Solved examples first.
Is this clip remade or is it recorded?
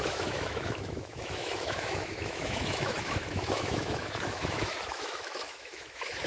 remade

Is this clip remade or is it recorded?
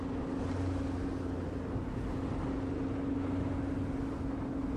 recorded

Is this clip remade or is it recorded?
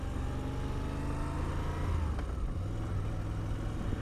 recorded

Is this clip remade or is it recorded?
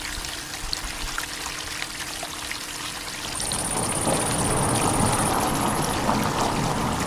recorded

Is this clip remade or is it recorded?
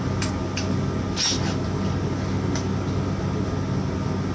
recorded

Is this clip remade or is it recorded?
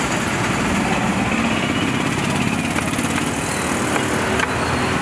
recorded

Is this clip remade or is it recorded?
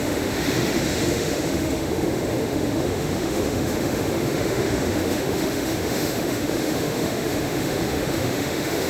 remade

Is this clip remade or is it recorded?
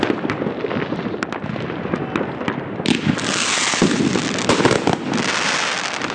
recorded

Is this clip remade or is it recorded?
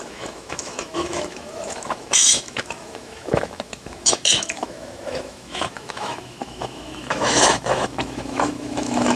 remade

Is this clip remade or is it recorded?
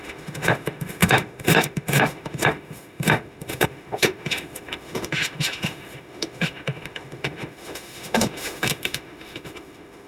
remade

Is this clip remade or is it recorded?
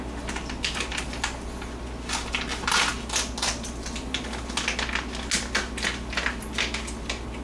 recorded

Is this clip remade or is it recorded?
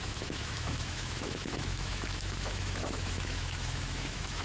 remade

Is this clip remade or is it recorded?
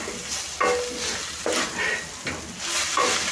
recorded